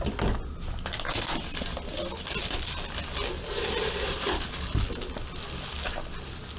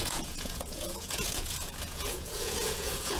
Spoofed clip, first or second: second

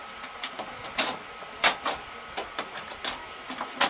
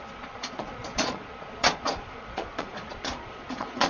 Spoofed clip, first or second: second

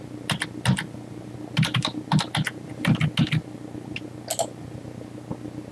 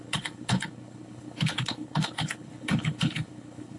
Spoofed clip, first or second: second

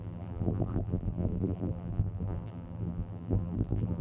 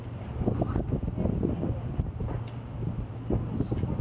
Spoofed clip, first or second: first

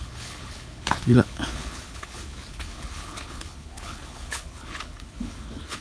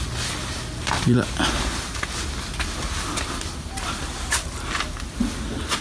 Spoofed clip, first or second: first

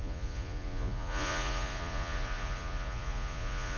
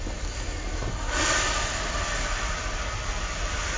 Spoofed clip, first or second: first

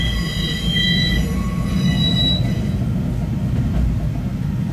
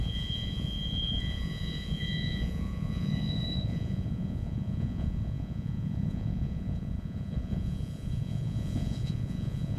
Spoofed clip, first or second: second